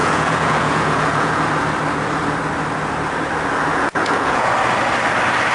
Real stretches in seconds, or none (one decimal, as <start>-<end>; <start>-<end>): 1.5-3.7; 4.5-5.5